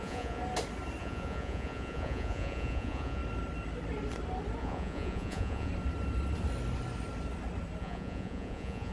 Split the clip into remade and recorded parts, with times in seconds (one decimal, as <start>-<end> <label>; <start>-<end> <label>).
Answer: 0.0-0.4 remade; 0.4-1.0 recorded; 1.0-3.2 remade; 3.2-4.6 recorded; 4.6-5.7 remade; 5.7-7.8 recorded; 7.8-8.9 remade